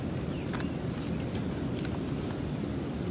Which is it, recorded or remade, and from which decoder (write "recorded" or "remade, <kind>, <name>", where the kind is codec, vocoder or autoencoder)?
recorded